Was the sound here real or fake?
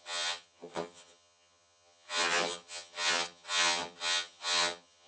fake